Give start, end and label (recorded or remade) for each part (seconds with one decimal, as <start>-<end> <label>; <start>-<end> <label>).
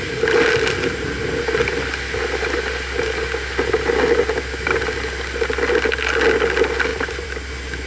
0.0-6.9 recorded; 6.9-7.5 remade; 7.5-7.9 recorded